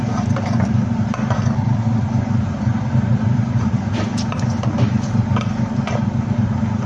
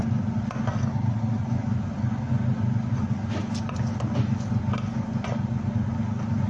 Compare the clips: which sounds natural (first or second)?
second